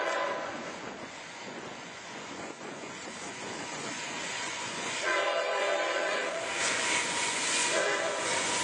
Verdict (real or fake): fake